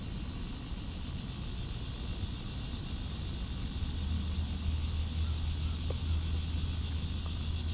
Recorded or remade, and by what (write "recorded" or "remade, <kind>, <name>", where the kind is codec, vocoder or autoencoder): recorded